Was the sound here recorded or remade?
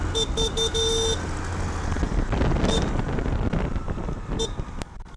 recorded